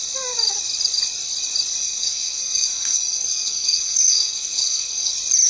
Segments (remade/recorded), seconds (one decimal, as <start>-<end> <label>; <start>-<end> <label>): 0.0-1.8 recorded; 1.8-5.1 remade; 5.1-5.5 recorded